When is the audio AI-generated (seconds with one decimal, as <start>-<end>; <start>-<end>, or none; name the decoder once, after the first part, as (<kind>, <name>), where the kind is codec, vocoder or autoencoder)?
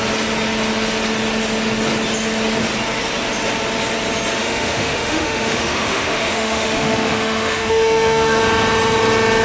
4.4-8.4 (autoencoder, DAC-VAE)